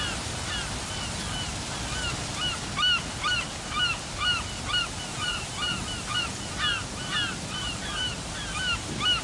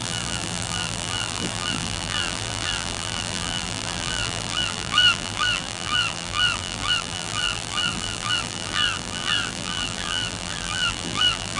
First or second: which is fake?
second